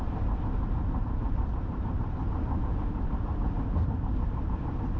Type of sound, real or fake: fake